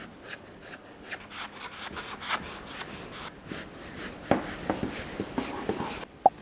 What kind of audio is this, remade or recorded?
recorded